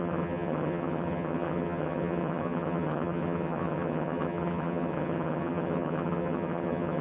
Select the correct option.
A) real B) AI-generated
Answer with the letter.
B